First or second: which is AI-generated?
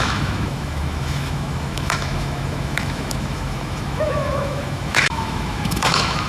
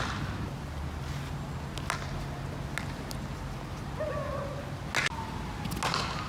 first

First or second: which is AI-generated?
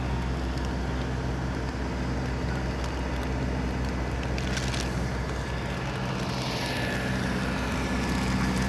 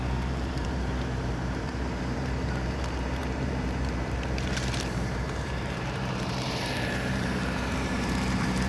second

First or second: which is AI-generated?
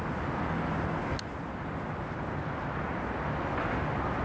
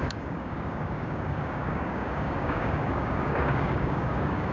second